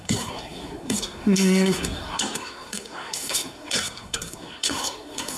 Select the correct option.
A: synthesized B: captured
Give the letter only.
A